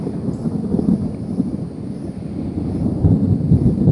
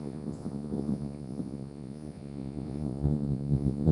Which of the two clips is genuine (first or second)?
first